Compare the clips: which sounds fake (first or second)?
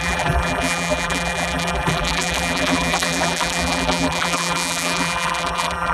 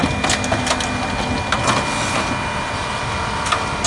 first